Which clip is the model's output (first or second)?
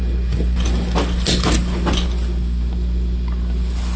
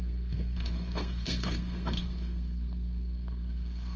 second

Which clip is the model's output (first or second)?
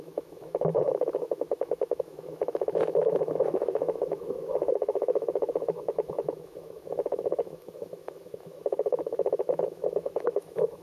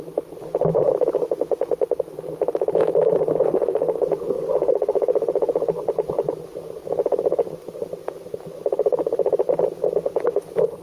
first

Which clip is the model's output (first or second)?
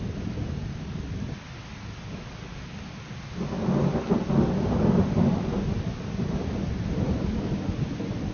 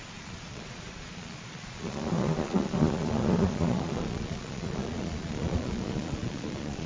second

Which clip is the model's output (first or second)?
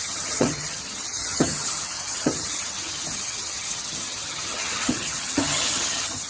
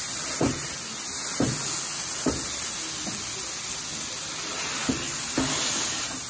first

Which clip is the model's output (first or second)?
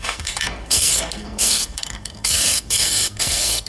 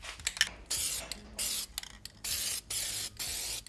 first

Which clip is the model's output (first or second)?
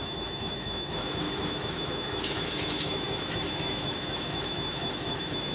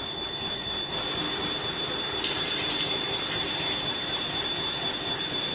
first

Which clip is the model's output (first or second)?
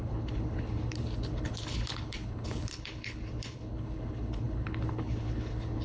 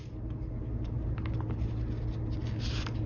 first